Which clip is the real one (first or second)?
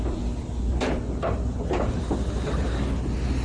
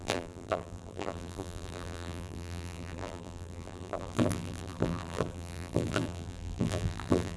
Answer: first